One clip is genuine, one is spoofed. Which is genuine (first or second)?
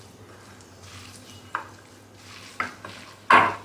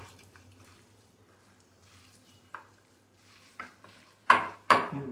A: first